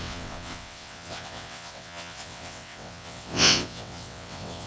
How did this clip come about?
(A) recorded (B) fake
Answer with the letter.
B